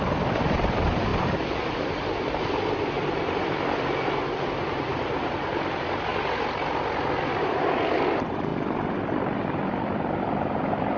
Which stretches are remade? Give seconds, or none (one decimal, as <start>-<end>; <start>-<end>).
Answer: 0.0-6.1; 7.3-8.5; 9.0-11.0